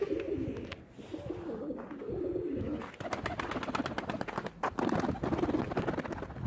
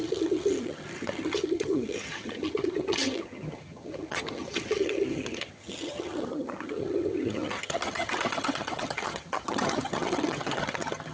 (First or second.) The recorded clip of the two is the first